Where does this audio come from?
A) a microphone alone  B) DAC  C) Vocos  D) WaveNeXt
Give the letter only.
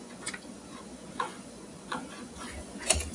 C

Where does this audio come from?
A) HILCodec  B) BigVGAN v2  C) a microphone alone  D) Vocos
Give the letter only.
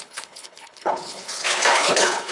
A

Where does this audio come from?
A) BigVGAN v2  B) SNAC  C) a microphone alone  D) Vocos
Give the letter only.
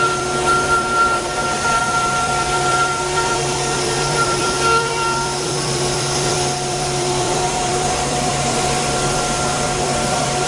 A